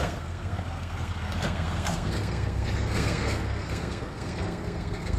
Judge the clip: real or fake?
fake